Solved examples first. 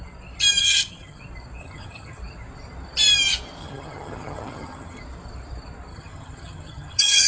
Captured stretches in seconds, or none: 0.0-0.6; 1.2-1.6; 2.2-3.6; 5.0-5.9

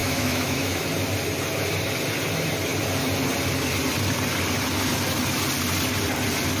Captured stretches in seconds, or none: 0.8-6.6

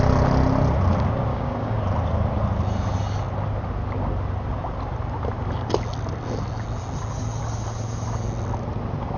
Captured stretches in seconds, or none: 0.0-1.3; 1.8-9.2